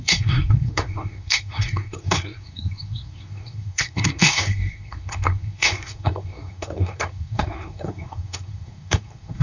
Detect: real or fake fake